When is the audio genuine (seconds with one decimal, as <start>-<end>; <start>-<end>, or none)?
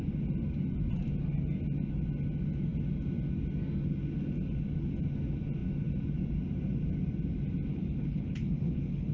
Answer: 0.0-7.7